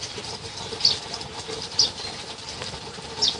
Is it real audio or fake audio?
fake